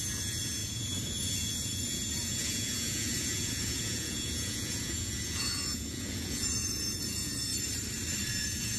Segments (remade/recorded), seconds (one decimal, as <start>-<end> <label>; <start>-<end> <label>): 0.0-7.5 remade; 7.5-8.3 recorded; 8.3-8.8 remade